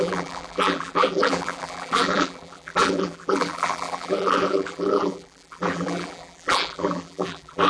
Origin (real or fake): fake